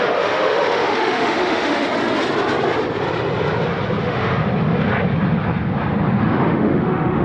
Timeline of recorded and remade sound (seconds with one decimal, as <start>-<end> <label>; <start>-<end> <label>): 0.0-1.9 remade; 1.9-4.0 recorded; 4.0-4.4 remade; 4.4-6.1 recorded; 6.1-7.2 remade